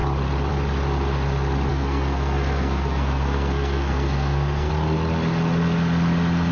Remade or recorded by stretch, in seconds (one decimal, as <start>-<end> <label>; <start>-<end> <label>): 0.0-1.7 recorded; 1.7-4.7 remade; 4.7-6.5 recorded